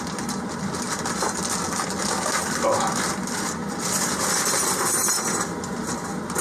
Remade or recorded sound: recorded